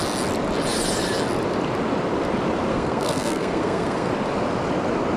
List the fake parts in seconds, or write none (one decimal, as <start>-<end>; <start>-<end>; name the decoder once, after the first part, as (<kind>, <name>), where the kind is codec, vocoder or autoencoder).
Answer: 2.7-4.1 (codec, SNAC)